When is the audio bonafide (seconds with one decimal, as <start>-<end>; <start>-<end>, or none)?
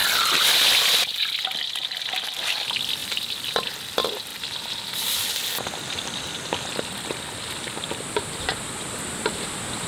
0.0-3.0; 3.7-4.3; 5.3-9.9